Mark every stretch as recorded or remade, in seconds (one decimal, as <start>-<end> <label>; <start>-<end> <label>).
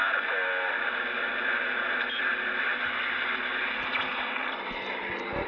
0.0-5.5 recorded